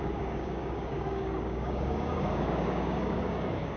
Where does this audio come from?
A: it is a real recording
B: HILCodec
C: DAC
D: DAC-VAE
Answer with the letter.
C